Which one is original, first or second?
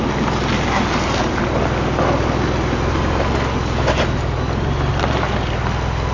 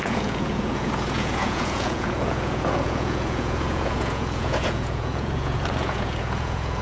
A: first